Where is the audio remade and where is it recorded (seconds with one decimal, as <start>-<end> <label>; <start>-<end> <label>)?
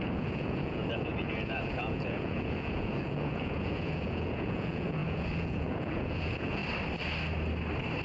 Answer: 0.0-6.6 remade; 6.6-8.0 recorded